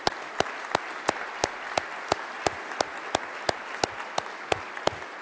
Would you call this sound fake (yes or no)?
no